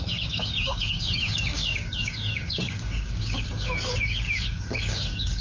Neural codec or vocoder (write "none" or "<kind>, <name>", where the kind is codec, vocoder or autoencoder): codec, DAC